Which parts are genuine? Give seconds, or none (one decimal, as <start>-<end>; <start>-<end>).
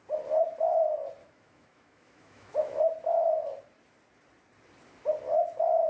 0.0-1.2; 2.8-5.9